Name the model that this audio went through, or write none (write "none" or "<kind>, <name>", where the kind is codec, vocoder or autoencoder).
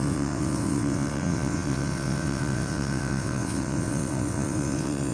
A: vocoder, WaveNeXt